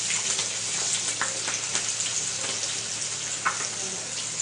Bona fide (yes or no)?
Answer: yes